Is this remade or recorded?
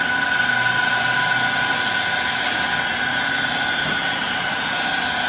recorded